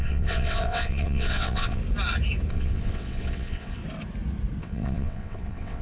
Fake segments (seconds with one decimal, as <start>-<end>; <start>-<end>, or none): 0.0-1.8; 2.5-3.8; 4.6-5.8

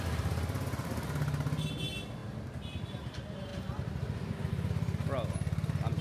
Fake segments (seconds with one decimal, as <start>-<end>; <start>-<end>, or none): none

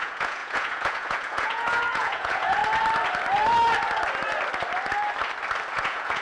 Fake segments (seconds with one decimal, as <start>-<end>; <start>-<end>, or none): 0.0-2.6; 5.7-6.2

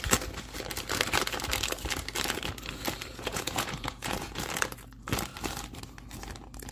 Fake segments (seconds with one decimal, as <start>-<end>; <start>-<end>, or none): 3.1-4.4

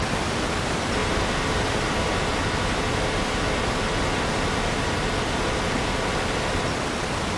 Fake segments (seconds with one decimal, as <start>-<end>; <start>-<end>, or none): none